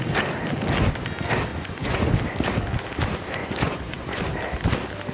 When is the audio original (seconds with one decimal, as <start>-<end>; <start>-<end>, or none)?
0.0-1.5; 2.1-3.4; 4.2-5.1